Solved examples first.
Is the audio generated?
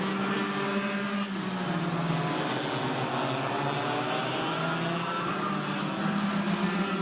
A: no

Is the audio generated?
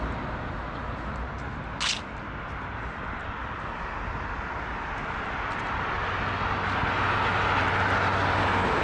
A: no